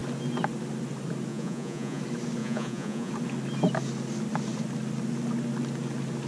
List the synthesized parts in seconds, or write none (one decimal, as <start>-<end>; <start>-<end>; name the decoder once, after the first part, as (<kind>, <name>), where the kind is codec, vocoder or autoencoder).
1.3-2.0 (vocoder, Vocos); 2.4-3.1